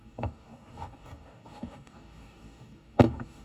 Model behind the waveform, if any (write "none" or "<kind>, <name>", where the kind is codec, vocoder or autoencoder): codec, DAC